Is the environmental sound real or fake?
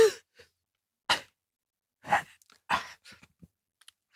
real